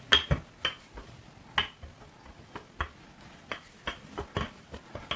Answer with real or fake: real